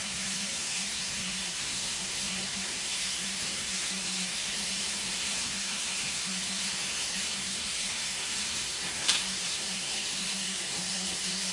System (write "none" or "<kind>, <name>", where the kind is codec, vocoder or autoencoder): codec, SNAC